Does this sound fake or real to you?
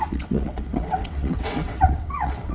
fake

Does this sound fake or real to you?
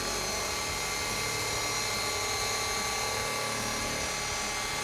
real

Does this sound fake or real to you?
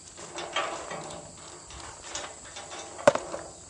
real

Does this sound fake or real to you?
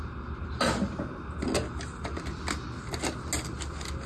real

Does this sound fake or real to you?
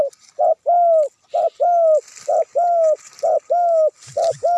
real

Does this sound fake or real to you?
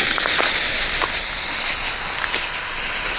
real